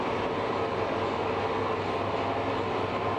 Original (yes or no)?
yes